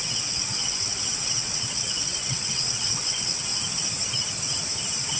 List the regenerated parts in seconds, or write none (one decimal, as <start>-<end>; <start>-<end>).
0.0-3.5